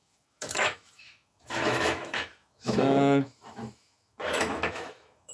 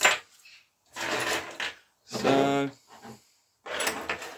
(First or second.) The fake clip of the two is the first